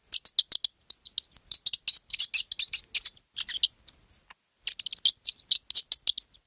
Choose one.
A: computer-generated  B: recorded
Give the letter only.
B